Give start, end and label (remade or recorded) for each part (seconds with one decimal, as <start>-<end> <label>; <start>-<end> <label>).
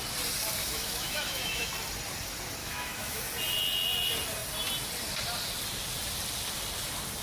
0.0-0.6 recorded; 0.6-1.7 remade; 1.7-2.6 recorded; 2.6-3.2 remade; 3.2-7.2 recorded